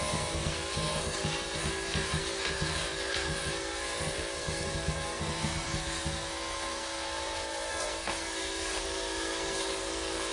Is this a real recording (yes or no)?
no